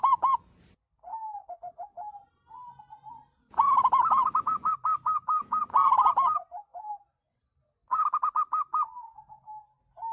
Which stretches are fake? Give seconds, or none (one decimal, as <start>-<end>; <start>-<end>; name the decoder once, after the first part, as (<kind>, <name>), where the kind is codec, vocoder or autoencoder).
none